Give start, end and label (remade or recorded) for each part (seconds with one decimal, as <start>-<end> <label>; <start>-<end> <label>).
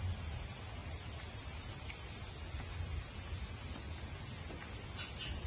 0.0-0.8 recorded; 0.8-1.4 remade; 1.4-5.5 recorded